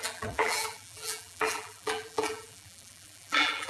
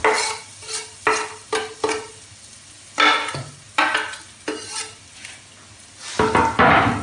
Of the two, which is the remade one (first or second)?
first